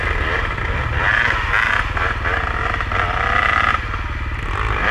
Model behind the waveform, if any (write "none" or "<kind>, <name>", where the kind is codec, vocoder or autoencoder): none